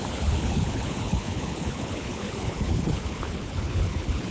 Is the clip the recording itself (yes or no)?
no